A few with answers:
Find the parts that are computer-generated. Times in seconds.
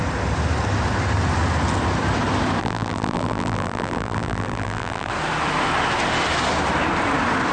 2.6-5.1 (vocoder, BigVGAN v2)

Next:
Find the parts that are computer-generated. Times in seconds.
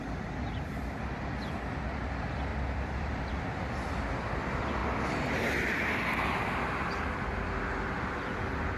2.5-3.3 (vocoder, BigVGAN v2)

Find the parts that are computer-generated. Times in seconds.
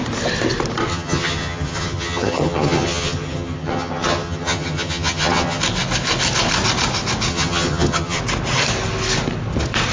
0.9-5.6 (vocoder, HiFi-GAN); 7.3-8.2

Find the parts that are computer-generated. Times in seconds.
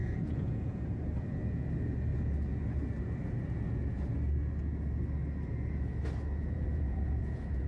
0.0-0.8 (vocoder, Vocos); 6.4-7.7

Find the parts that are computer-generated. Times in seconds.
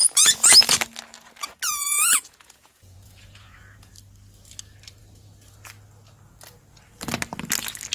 0.0-0.5 (vocoder, Vocos); 1.4-3.9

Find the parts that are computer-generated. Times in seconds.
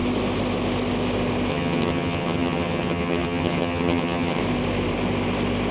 1.5-4.4 (vocoder, HiFi-GAN)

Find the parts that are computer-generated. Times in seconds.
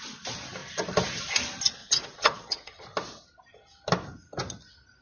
1.8-2.8 (vocoder, WaveNeXt)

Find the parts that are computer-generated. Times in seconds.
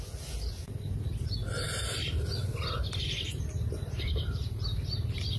3.3-5.4 (vocoder, BigVGAN v2)